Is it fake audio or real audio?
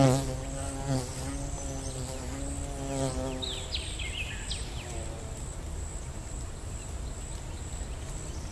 real